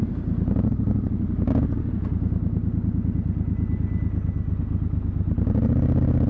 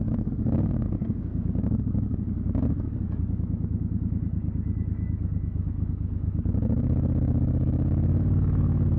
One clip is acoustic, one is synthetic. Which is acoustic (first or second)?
first